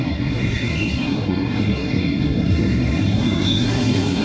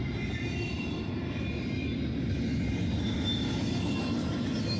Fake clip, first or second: first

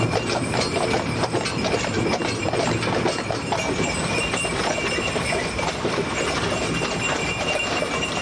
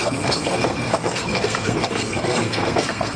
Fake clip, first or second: second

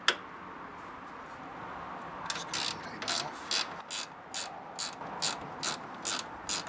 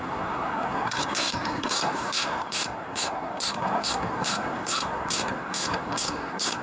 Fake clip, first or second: second